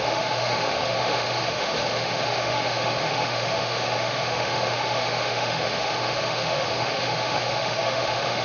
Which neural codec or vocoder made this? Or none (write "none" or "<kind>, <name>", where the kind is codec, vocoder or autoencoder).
autoencoder, DAC-VAE